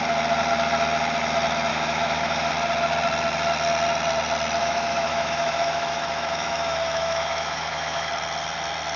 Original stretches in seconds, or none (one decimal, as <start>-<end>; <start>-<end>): 0.0-1.7; 2.5-4.6; 8.1-9.0